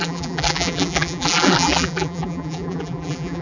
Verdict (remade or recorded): remade